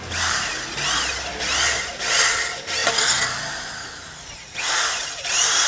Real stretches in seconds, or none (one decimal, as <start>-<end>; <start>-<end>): 0.5-2.0; 2.8-4.9